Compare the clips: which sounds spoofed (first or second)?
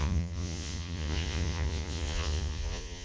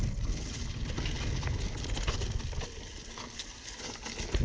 first